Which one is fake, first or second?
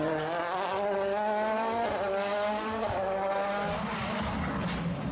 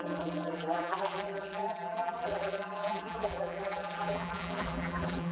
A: second